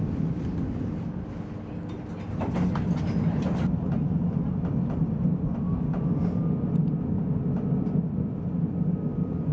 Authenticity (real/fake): real